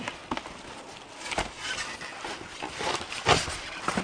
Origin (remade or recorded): recorded